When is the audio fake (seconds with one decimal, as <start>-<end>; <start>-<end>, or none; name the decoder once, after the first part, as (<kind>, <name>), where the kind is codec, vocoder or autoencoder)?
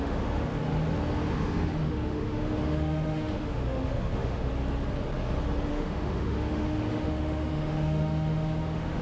0.0-0.5 (autoencoder, DAC-VAE); 1.3-4.5; 5.7-9.0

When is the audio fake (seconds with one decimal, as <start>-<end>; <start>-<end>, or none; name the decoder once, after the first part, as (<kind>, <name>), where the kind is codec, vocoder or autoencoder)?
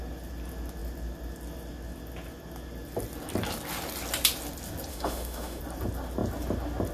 4.9-5.6 (autoencoder, DAC-VAE)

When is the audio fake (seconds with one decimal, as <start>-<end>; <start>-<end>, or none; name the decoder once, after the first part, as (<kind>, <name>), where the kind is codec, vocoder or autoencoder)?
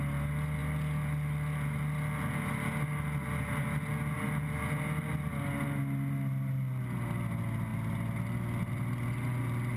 none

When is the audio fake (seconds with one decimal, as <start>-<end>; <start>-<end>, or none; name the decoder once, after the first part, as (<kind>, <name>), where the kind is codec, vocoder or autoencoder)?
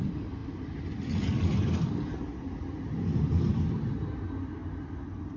none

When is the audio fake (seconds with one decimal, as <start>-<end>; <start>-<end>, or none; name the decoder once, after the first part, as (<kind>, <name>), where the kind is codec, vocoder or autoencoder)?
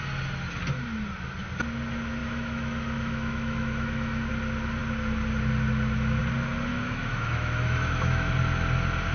2.2-4.3 (autoencoder, DAC-VAE); 6.7-8.3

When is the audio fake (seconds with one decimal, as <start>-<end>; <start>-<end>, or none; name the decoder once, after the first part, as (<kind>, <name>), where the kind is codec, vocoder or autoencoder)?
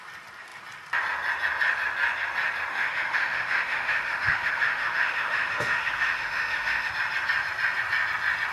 2.7-6.9 (autoencoder, DAC-VAE)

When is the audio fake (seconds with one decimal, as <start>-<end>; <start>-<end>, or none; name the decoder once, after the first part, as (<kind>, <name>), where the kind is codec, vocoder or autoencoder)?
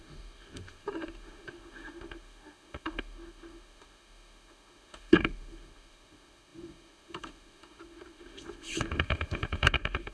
0.0-10.1 (autoencoder, DAC-VAE)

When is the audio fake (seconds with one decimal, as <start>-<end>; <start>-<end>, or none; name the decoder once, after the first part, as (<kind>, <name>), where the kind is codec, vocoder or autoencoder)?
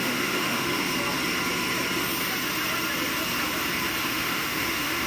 0.0-0.9 (autoencoder, DAC-VAE); 4.0-5.1